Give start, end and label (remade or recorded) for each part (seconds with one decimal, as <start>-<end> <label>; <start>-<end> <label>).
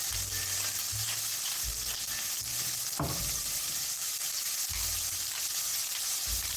0.0-0.8 remade; 0.8-3.2 recorded; 3.2-6.6 remade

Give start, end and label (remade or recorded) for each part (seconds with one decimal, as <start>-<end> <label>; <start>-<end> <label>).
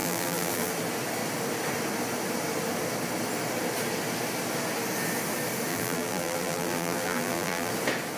0.0-0.7 remade; 0.7-5.7 recorded; 5.7-7.7 remade; 7.7-8.2 recorded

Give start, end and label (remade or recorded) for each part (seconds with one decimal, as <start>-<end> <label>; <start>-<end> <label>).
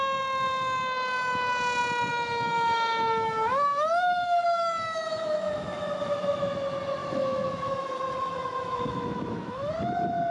0.0-2.1 recorded; 2.1-6.4 remade; 6.4-7.0 recorded; 7.0-9.7 remade; 9.7-10.3 recorded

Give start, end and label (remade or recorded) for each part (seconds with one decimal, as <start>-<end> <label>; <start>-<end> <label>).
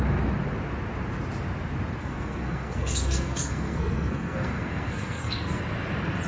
0.0-2.0 recorded; 2.0-5.6 remade; 5.6-6.3 recorded